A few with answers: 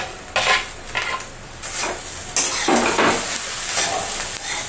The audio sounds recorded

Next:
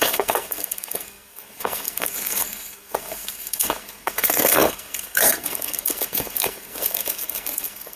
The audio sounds remade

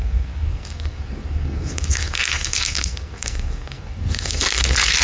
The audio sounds remade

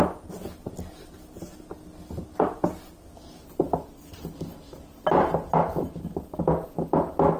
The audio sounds recorded